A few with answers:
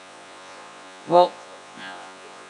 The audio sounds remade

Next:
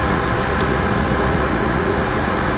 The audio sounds remade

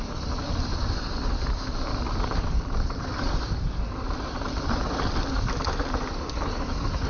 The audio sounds recorded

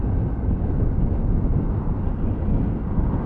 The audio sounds recorded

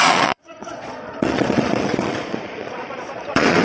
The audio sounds remade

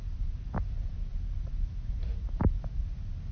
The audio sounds recorded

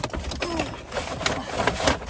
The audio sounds recorded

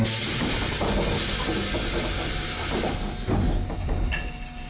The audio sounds recorded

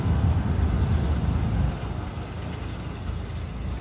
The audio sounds recorded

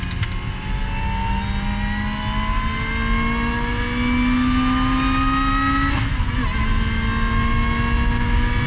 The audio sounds recorded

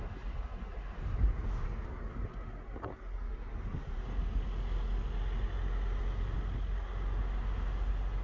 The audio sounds recorded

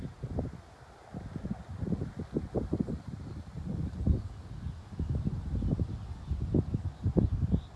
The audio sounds recorded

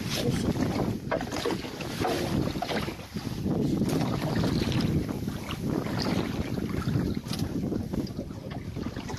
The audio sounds recorded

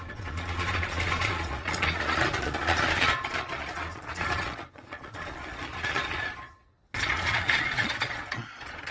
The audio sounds remade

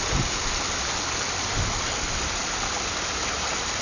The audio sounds recorded